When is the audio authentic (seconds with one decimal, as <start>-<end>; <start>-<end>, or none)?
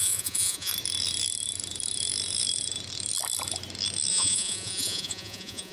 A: 0.7-4.1